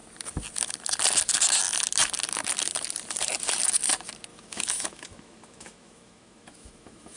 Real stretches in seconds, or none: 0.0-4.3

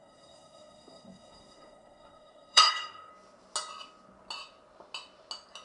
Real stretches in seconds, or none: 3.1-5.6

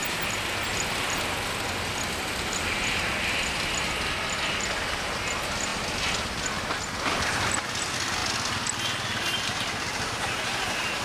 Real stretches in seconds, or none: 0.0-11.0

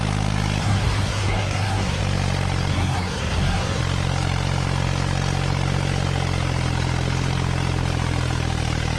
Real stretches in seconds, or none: 0.0-0.6; 2.0-2.7; 3.8-9.0

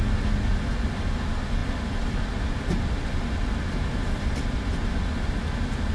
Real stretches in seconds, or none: 0.0-5.9

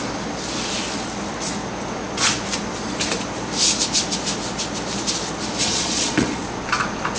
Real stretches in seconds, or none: 0.0-5.6; 6.4-7.2

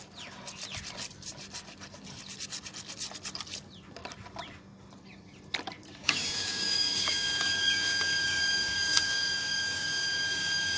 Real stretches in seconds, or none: 0.0-6.0